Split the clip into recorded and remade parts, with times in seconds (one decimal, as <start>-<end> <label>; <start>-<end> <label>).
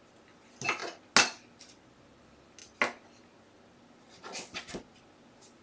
0.0-5.6 recorded